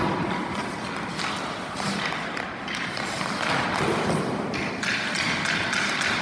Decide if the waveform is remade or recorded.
recorded